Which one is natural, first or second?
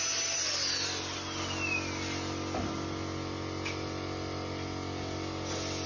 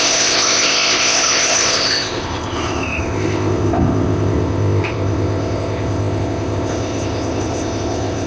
first